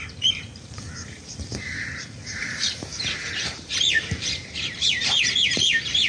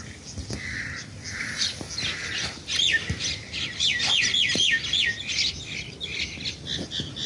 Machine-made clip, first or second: first